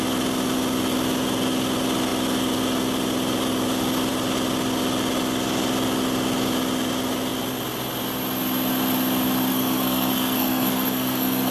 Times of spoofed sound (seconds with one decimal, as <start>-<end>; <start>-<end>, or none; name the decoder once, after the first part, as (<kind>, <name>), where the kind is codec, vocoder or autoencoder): 9.5-11.5 (codec, SNAC)